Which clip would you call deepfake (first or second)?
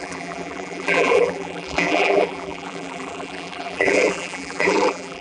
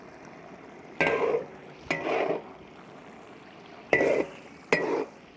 first